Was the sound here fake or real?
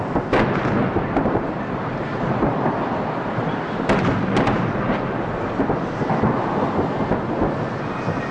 real